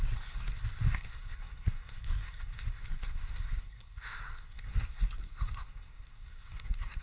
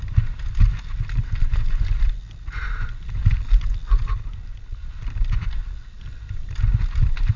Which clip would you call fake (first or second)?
first